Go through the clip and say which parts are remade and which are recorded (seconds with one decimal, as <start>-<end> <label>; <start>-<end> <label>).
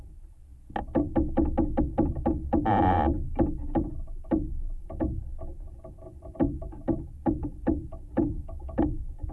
0.0-0.5 remade; 0.5-1.8 recorded; 1.8-9.3 remade